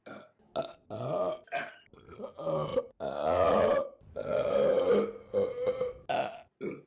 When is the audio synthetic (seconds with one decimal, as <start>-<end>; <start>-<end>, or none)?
2.7-4.5